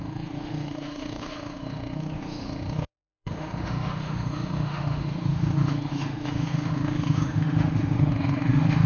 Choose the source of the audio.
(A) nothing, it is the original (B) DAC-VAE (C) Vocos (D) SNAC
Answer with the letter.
B